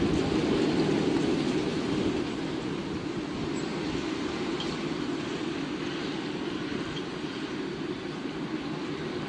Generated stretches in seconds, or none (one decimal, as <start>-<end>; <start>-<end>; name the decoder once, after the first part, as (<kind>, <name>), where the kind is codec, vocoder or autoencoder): none